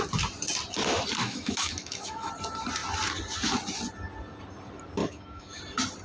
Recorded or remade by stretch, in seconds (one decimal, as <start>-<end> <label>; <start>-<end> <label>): 0.0-1.2 recorded; 1.2-2.3 remade; 2.3-5.0 recorded; 5.0-5.6 remade; 5.6-6.0 recorded